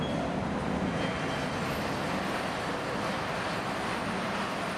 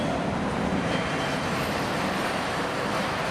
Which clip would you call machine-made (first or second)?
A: second